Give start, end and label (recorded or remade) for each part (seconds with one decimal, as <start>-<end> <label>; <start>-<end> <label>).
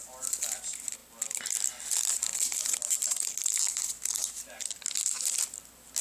0.0-6.0 recorded